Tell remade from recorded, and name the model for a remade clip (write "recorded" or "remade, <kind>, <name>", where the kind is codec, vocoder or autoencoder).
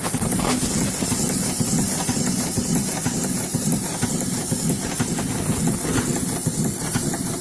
recorded